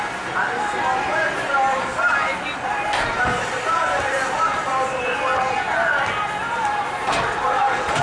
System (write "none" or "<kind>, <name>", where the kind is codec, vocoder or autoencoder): none